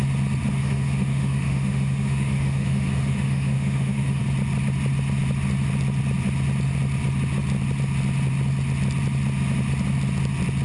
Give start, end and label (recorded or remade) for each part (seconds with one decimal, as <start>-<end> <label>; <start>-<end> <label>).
0.0-0.5 recorded; 0.5-4.2 remade; 4.2-10.6 recorded